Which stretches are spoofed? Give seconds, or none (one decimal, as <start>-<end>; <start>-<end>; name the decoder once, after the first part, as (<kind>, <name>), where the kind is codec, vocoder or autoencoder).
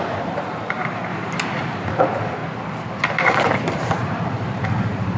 0.0-1.1 (vocoder, BigVGAN v2); 2.0-2.4; 2.9-5.2